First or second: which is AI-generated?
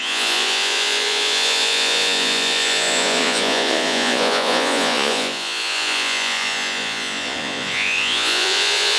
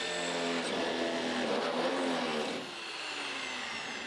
first